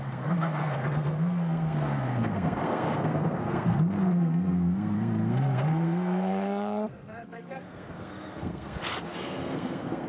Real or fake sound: fake